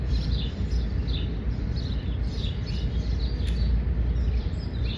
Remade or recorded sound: recorded